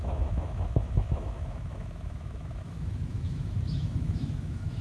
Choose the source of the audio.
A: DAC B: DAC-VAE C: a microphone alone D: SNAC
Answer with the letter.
B